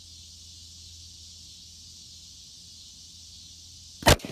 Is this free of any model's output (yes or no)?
yes